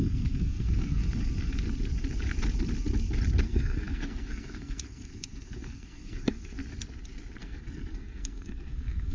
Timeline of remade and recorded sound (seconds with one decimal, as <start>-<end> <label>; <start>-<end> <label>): 0.0-1.0 remade; 1.0-3.4 recorded; 3.4-6.6 remade; 6.6-7.4 recorded; 7.4-9.1 remade